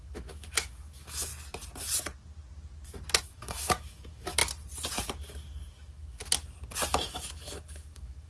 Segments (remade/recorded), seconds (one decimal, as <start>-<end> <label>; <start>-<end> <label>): 0.0-1.3 remade; 1.3-3.2 recorded; 3.2-4.4 remade; 4.4-5.7 recorded; 5.7-6.2 remade; 6.2-6.9 recorded; 6.9-8.3 remade